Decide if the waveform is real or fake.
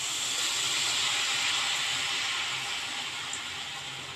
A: real